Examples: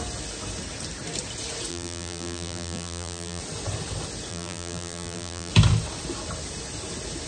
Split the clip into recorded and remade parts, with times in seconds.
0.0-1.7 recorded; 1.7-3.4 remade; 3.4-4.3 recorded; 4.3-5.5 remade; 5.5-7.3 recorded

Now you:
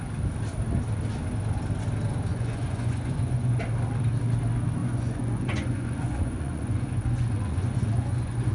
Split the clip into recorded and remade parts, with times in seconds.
0.0-2.3 recorded; 2.3-3.6 remade; 3.6-4.8 recorded; 4.8-8.5 remade

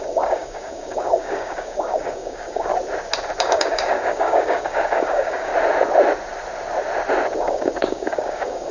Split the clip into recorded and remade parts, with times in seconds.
0.0-2.7 remade; 2.7-3.4 recorded; 3.4-5.5 remade; 5.5-7.4 recorded; 7.4-8.7 remade

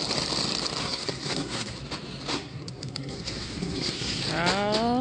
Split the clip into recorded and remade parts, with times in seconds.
0.0-0.8 recorded; 0.8-1.8 remade; 1.8-2.3 recorded; 2.3-4.2 remade; 4.2-5.0 recorded